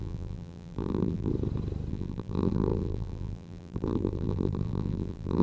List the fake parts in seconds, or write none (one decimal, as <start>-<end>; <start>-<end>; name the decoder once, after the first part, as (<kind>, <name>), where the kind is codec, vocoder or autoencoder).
0.0-1.3 (vocoder, BigVGAN v2); 1.9-5.4